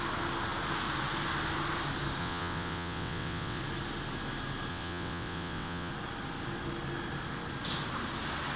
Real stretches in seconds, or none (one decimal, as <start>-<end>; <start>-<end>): 0.0-2.2; 3.6-4.7; 5.9-8.6